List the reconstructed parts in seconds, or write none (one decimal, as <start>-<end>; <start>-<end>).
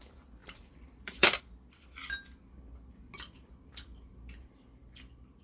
0.4-1.4